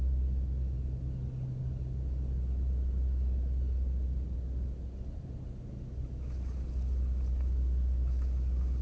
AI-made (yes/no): no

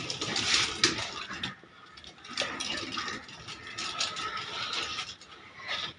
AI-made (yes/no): no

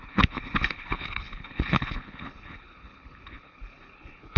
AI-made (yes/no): yes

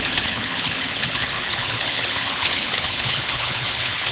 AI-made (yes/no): yes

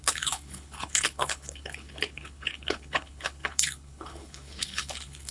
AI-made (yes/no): yes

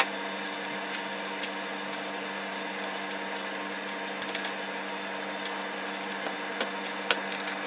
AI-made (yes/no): no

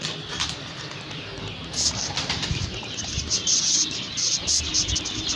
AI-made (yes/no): no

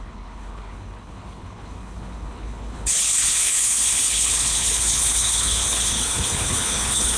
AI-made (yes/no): yes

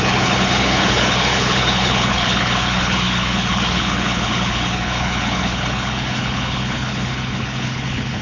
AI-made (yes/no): yes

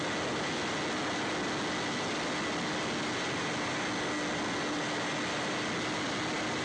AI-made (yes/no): no